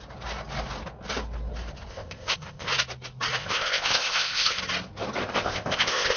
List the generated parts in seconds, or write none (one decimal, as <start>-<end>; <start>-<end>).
1.9-2.7; 3.4-4.6; 5.2-6.2